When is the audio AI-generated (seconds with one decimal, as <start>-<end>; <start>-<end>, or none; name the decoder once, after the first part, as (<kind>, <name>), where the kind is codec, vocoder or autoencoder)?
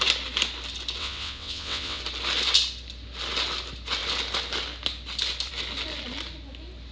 1.0-2.0 (vocoder, WaveNeXt)